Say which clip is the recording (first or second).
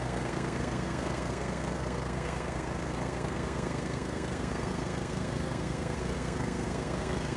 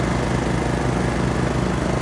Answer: second